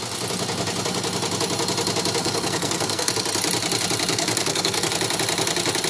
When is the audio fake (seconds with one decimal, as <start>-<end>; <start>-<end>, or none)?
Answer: 2.2-3.1; 4.1-4.9